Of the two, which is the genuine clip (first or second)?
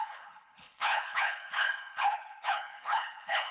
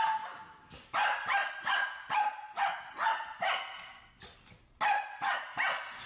second